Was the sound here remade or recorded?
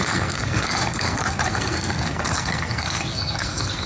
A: remade